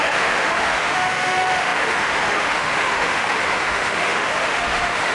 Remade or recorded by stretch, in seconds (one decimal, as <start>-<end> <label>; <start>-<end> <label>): 0.0-5.1 remade